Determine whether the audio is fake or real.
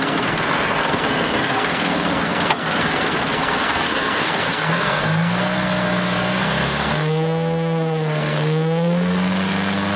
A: fake